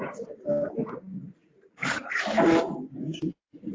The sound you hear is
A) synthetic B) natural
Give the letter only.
B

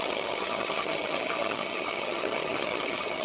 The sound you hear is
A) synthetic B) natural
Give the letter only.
A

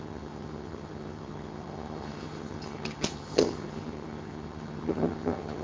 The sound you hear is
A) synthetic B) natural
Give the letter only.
A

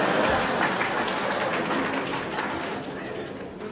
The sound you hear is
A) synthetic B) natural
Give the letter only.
B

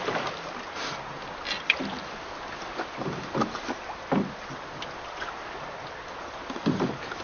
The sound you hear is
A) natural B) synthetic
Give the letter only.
A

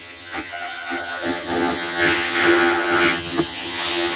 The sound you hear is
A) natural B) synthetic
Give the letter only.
B